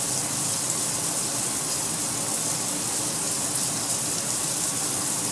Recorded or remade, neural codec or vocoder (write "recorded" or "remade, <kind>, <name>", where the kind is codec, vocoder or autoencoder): recorded